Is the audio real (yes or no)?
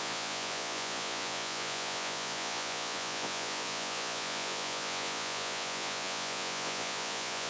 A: no